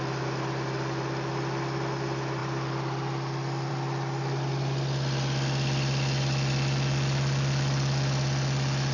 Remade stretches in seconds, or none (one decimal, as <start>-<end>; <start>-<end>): none